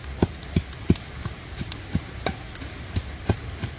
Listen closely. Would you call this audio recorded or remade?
recorded